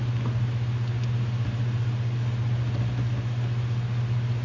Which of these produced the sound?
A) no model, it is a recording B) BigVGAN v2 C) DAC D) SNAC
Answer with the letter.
A